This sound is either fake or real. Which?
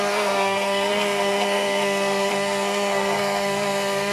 fake